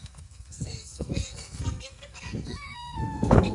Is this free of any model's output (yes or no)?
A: no